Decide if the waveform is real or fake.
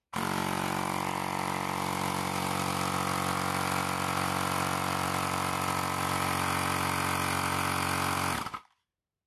fake